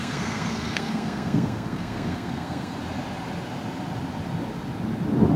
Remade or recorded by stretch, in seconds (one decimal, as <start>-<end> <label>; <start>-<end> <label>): 0.0-2.8 remade; 2.8-5.4 recorded